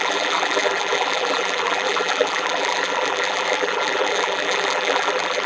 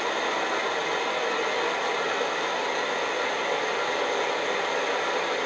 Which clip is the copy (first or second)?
first